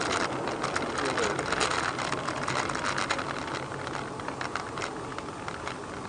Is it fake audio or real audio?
real